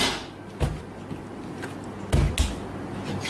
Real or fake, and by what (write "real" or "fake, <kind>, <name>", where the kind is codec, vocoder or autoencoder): real